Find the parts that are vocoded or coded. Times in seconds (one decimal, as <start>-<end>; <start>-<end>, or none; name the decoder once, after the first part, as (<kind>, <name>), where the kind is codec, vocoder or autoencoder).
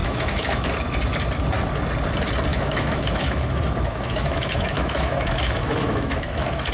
0.0-0.7 (autoencoder, DAC-VAE); 2.5-6.7